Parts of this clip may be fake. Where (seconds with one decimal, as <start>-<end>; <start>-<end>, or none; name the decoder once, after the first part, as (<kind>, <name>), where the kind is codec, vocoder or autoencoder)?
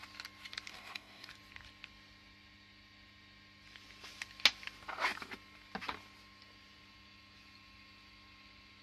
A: 0.7-1.3 (codec, DAC)